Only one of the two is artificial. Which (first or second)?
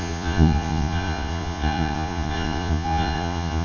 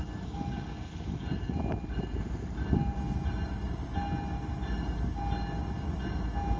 first